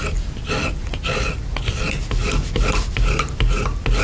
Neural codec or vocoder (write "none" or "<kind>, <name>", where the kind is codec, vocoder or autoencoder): none